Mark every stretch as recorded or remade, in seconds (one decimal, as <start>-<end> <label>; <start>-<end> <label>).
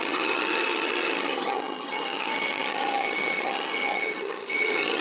0.0-5.0 remade